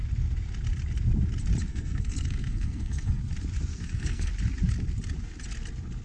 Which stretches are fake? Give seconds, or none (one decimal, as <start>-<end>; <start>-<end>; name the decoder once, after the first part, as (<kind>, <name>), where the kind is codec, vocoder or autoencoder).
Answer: 1.7-3.2 (codec, SNAC); 3.7-4.3